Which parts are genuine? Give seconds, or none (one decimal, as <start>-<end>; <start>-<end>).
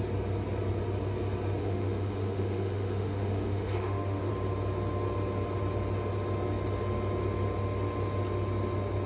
0.0-1.6; 4.3-9.1